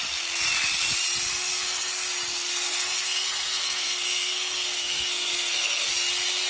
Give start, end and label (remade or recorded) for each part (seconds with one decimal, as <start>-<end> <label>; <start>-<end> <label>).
0.0-1.3 recorded; 1.3-1.9 remade; 1.9-2.3 recorded; 2.3-5.9 remade; 5.9-6.5 recorded

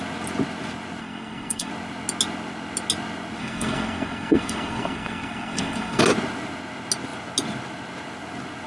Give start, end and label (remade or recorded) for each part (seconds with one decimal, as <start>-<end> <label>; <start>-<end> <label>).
0.0-1.0 recorded; 1.0-1.7 remade; 1.7-3.4 recorded; 3.4-6.0 remade; 6.0-8.7 recorded

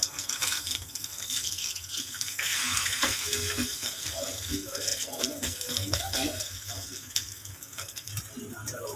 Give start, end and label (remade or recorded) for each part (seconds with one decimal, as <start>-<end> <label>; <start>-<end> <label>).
0.0-8.1 remade; 8.1-9.0 recorded

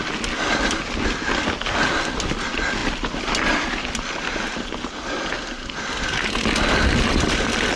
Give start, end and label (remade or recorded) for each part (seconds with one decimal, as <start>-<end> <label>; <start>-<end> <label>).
0.0-7.8 recorded

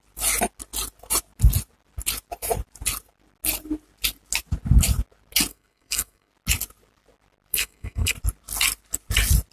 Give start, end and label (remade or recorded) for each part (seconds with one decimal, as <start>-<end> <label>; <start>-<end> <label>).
0.0-5.5 recorded; 5.5-6.3 remade; 6.3-7.5 recorded; 7.5-8.1 remade; 8.1-9.5 recorded